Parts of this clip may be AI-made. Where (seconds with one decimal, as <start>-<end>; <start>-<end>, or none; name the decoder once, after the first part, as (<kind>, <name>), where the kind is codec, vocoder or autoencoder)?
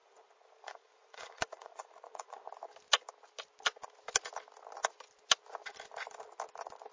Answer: 0.0-2.5 (vocoder, Vocos)